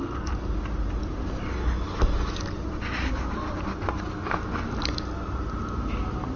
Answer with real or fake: real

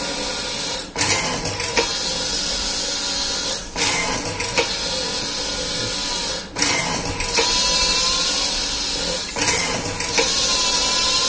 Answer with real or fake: real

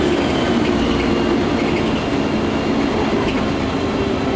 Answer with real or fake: real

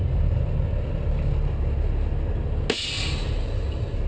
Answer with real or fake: real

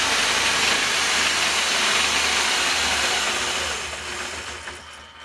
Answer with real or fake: real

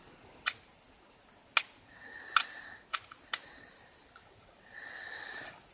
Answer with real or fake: real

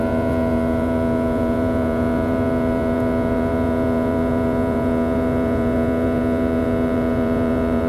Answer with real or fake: fake